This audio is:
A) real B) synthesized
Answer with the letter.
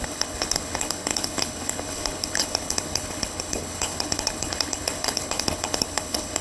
B